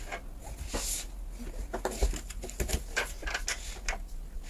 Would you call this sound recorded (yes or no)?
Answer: yes